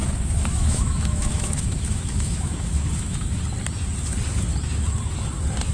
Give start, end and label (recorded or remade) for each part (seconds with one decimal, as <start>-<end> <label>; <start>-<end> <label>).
0.0-3.4 remade; 3.4-5.7 recorded